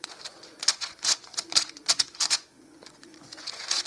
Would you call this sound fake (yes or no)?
yes